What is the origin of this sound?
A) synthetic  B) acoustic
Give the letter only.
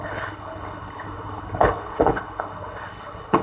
A